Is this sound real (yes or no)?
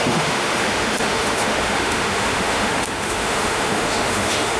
no